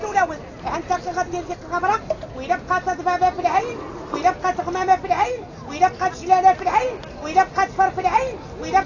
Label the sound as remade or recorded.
recorded